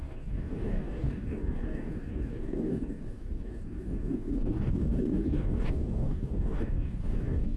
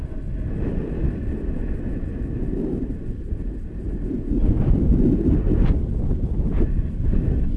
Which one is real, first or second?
second